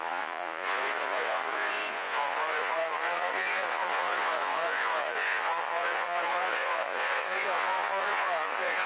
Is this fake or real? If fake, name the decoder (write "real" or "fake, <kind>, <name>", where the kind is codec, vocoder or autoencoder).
fake, vocoder, Vocos